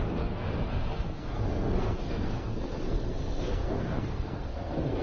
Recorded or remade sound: remade